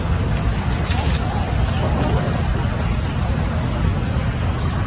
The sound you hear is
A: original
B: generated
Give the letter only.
A